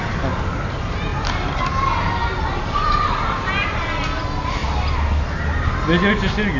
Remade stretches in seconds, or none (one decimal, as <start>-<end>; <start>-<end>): none